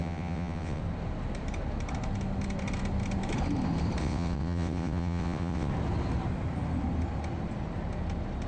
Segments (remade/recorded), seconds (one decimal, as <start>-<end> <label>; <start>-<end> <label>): 0.0-0.8 remade; 0.8-4.0 recorded; 4.0-5.7 remade; 5.7-8.5 recorded